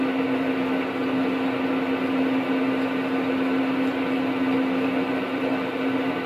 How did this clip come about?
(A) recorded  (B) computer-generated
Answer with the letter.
A